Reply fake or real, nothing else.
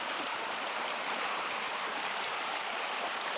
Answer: fake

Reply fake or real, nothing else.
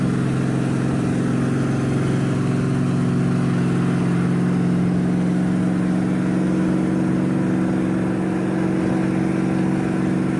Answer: real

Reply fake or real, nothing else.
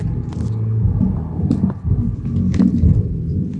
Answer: real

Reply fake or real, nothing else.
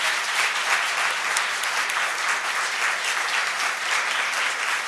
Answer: real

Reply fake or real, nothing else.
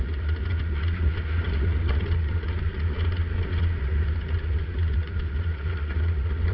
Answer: fake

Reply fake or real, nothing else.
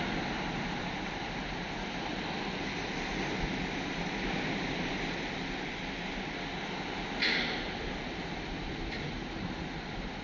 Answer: real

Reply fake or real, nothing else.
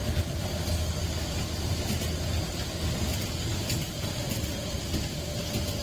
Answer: real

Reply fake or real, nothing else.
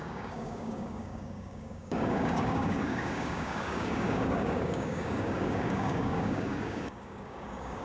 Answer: fake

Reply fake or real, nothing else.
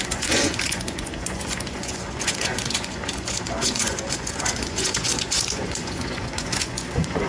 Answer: fake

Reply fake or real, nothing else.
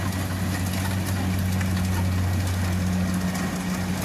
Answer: real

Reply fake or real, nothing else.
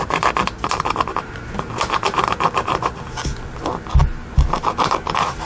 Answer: real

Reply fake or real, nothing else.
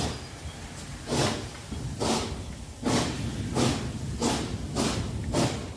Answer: real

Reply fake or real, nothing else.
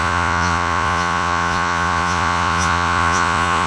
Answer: fake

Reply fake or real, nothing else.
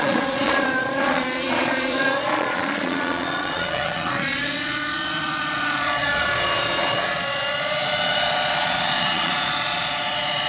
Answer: fake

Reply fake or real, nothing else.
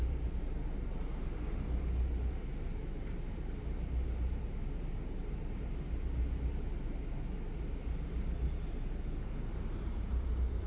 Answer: real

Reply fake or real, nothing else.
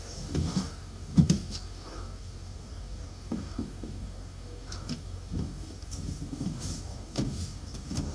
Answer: fake